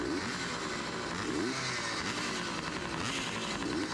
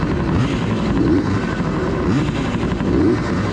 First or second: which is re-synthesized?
second